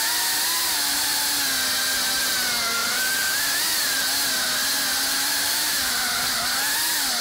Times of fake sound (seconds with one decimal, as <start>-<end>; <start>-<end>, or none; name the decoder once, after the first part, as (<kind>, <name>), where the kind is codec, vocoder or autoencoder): 0.6-1.2 (vocoder, BigVGAN v2); 2.8-4.0; 5.1-6.4